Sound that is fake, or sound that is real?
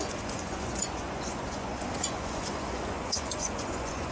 fake